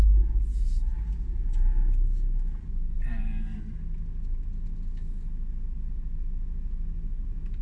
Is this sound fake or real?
real